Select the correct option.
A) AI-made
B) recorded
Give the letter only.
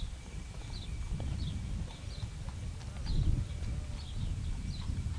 B